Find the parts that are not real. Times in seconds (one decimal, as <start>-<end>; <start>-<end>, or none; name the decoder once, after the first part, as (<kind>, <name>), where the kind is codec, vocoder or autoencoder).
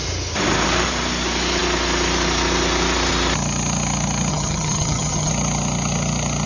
4.3-5.3 (vocoder, HiFi-GAN)